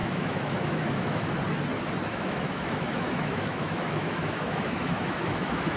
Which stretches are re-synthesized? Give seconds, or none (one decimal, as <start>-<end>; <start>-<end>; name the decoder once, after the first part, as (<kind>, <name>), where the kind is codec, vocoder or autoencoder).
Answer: 0.0-1.3 (autoencoder, DAC-VAE); 2.1-5.8